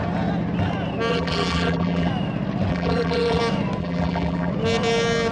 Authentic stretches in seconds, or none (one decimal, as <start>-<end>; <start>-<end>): 0.0-1.1; 2.1-2.7; 3.4-3.8; 4.5-5.3